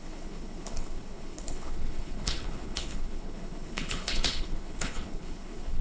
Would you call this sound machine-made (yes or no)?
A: yes